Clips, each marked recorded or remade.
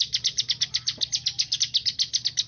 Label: recorded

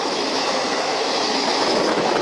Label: remade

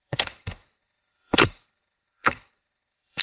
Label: remade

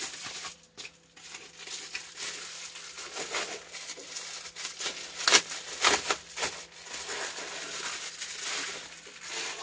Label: recorded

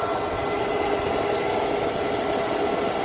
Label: recorded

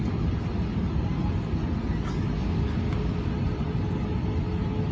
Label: recorded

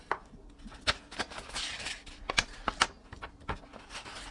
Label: recorded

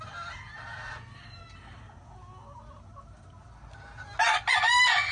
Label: recorded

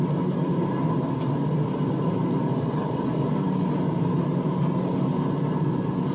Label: recorded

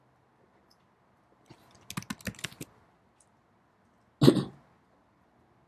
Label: recorded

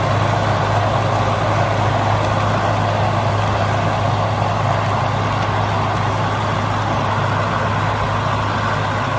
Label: recorded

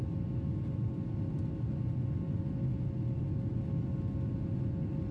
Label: recorded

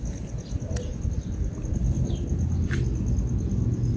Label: recorded